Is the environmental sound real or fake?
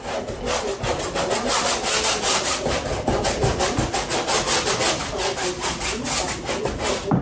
real